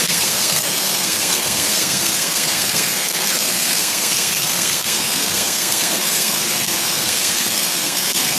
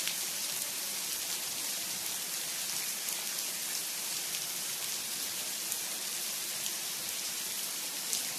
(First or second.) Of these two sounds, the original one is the second